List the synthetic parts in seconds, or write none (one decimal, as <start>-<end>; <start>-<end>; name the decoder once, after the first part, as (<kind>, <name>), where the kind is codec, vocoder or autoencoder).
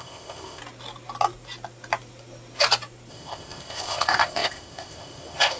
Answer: 0.0-0.6 (codec, ZipCodec); 3.1-5.6